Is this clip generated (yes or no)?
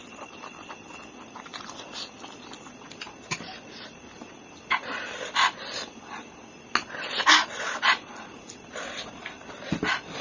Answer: no